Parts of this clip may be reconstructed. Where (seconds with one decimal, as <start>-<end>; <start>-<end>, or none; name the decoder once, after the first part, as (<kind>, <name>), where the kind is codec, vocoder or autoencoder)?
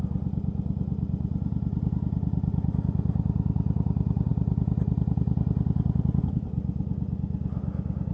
none